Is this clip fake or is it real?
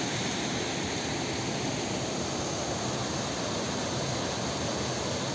real